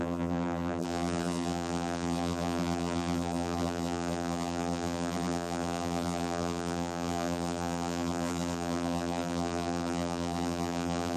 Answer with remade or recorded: remade